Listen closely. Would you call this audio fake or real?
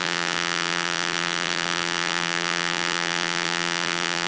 fake